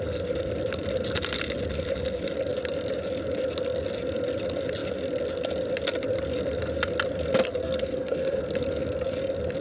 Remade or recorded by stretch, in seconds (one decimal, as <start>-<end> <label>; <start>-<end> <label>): 0.0-7.6 recorded; 7.6-8.4 remade; 8.4-9.6 recorded

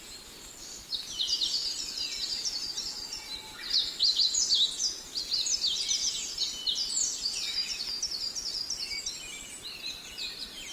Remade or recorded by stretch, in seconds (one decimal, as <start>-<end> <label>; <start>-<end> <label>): 0.0-10.7 recorded

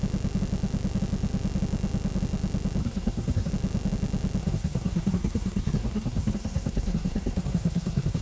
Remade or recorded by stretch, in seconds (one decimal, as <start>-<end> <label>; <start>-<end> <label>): 0.0-2.8 recorded; 2.8-3.5 remade; 3.5-4.4 recorded; 4.4-8.2 remade

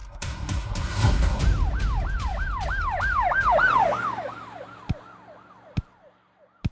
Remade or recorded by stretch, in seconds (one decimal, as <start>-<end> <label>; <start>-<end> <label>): 0.0-1.4 remade; 1.4-6.7 recorded

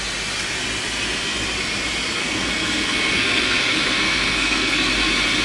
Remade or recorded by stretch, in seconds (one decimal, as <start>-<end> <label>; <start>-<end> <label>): 0.0-2.2 recorded; 2.2-4.9 remade; 4.9-5.4 recorded